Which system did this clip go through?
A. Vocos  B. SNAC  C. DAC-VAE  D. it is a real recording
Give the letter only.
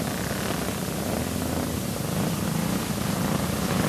D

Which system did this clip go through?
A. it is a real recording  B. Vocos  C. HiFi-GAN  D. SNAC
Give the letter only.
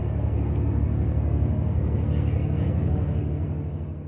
D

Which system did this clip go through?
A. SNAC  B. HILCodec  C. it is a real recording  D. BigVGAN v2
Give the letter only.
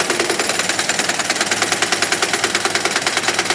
C